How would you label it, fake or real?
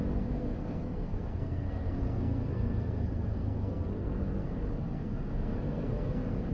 fake